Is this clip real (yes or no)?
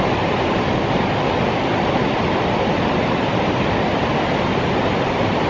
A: no